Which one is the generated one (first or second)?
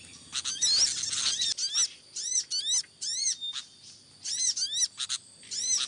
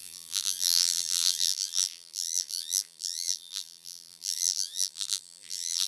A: second